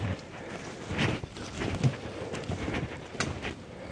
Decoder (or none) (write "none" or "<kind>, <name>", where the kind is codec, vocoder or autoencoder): none